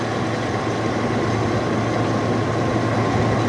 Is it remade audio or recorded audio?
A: recorded